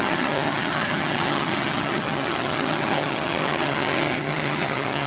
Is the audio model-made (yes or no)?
yes